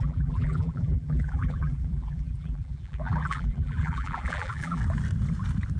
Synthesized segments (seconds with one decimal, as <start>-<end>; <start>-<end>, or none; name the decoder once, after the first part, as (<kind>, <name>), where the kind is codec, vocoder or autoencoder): 0.0-4.8 (vocoder, BigVGAN v2)